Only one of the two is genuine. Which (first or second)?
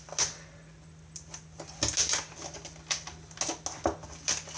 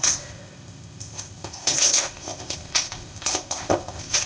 first